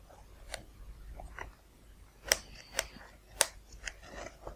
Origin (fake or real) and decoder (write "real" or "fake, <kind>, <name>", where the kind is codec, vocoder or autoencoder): real